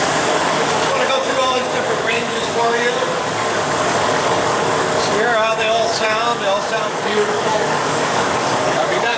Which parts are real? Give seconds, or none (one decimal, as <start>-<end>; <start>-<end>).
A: none